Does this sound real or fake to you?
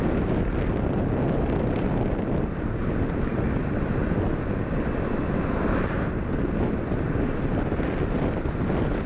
real